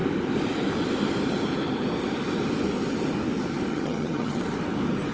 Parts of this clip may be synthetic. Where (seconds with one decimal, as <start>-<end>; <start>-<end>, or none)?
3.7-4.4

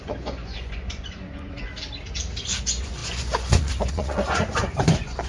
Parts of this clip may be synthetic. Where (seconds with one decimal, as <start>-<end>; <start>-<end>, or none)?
0.0-1.7; 2.6-5.3

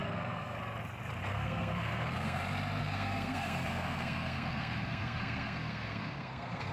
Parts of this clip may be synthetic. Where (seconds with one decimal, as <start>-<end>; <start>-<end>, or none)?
0.0-0.6; 1.3-2.4; 2.8-6.7

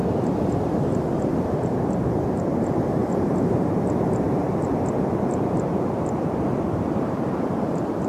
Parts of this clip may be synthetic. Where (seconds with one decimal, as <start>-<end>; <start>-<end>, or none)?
1.3-8.1

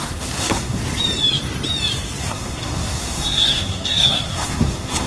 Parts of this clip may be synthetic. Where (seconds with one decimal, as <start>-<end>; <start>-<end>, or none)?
0.0-0.8; 2.2-5.1

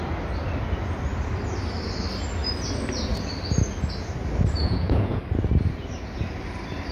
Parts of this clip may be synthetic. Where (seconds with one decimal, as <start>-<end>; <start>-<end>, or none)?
4.6-5.2

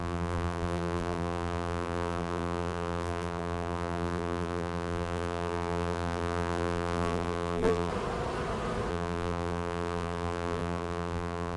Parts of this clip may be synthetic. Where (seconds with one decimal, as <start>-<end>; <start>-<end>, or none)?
0.0-7.9; 8.9-11.6

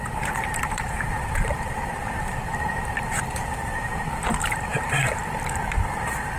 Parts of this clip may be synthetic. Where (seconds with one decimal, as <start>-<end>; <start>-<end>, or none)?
0.0-6.4